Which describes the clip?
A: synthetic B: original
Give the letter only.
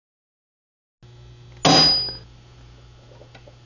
B